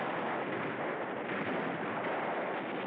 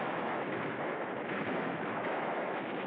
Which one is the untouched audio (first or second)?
first